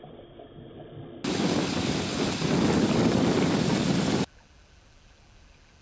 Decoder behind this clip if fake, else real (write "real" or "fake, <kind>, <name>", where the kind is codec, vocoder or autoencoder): real